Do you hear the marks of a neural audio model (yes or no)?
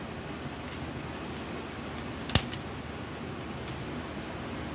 no